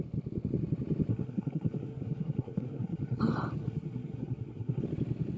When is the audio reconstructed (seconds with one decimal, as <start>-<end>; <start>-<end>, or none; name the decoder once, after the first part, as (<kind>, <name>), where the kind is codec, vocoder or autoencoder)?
1.1-3.2 (codec, SNAC); 3.6-4.8